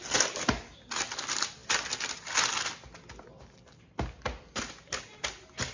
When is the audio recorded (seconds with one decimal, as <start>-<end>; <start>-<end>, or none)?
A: 0.0-5.7